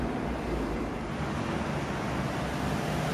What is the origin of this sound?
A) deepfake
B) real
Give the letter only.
B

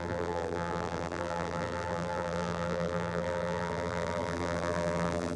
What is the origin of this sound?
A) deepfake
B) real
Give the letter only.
A